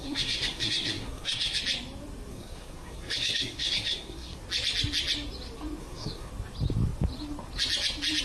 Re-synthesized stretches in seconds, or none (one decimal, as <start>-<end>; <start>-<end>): 0.0-1.6; 2.3-4.4; 5.8-6.3